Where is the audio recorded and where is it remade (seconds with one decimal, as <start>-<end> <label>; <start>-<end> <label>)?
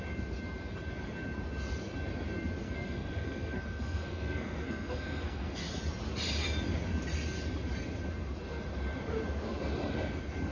0.0-2.6 recorded; 2.6-5.6 remade; 5.6-10.5 recorded